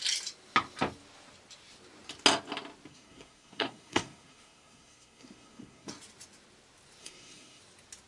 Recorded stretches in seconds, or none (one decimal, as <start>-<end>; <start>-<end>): 0.0-2.9; 5.9-7.0; 7.6-8.1